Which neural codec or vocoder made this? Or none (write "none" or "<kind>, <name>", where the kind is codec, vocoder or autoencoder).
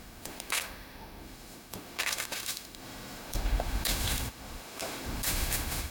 autoencoder, DAC-VAE